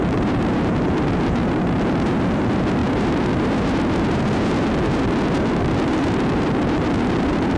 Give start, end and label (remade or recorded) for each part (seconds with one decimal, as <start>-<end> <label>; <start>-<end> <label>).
0.0-7.6 remade